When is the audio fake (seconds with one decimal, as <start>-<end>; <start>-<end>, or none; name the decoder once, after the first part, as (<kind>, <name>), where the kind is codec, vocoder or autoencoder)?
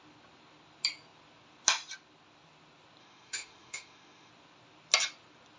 3.0-4.3 (autoencoder, DAC-VAE)